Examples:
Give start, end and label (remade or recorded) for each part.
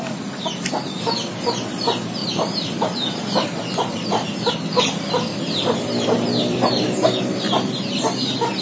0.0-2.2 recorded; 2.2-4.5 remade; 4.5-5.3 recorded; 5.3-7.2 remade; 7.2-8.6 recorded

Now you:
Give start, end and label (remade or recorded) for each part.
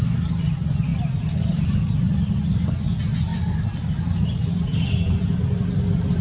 0.0-6.2 recorded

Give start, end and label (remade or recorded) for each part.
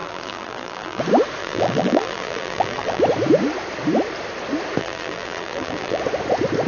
0.0-1.0 remade; 1.0-1.4 recorded; 1.4-3.0 remade; 3.0-4.8 recorded; 4.8-6.0 remade; 6.0-6.7 recorded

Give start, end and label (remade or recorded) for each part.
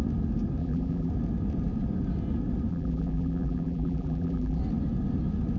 0.0-0.6 recorded; 0.6-1.1 remade; 1.1-2.7 recorded; 2.7-4.6 remade; 4.6-5.6 recorded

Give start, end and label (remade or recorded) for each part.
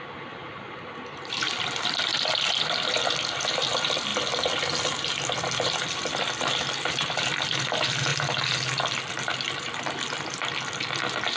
0.0-4.1 remade; 4.1-6.1 recorded; 6.1-8.1 remade; 8.1-11.4 recorded